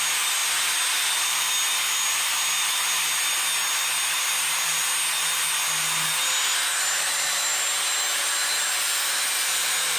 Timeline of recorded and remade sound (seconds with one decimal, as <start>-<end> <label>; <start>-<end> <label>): 0.0-10.0 recorded